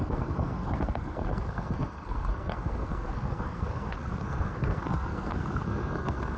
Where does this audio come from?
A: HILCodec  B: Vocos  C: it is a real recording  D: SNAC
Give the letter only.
D